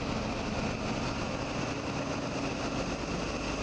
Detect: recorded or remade recorded